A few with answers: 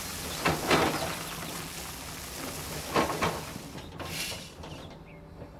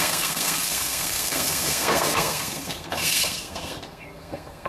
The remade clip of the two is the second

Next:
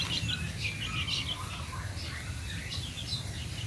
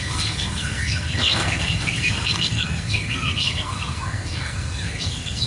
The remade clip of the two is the second